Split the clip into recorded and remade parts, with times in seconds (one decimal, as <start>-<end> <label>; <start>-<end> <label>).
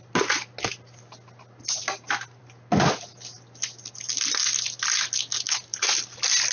0.0-6.5 recorded